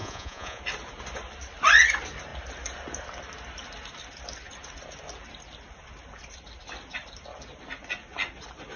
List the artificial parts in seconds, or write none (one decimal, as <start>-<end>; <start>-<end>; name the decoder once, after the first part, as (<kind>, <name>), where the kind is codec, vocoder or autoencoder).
0.0-0.6 (vocoder, Vocos)